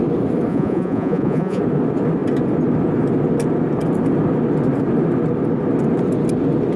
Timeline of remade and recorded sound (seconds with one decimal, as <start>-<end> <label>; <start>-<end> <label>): 0.0-0.5 recorded; 0.5-1.6 remade; 1.6-6.8 recorded